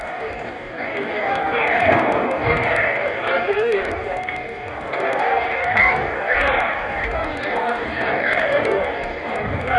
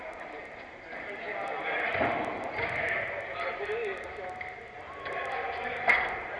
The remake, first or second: first